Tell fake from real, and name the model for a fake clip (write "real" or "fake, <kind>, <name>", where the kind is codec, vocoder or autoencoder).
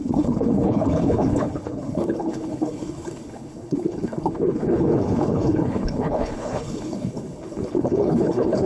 fake, codec, HILCodec